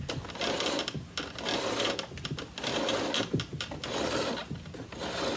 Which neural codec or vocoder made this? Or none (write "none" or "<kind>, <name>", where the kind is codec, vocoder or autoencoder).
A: none